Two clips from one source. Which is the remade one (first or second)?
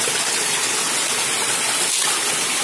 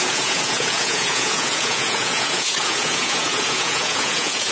second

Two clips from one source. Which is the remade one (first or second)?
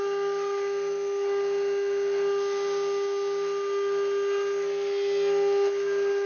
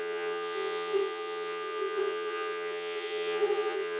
second